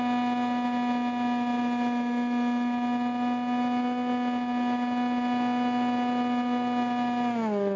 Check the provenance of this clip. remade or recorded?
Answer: recorded